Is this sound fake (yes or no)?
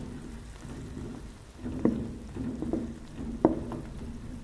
no